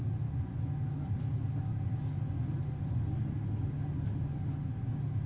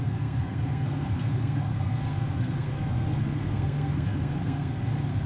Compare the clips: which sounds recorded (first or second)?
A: first